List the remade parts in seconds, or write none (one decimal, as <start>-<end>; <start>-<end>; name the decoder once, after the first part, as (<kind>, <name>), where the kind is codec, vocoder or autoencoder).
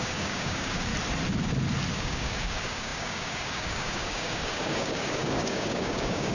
0.0-0.9 (codec, DAC); 1.9-6.3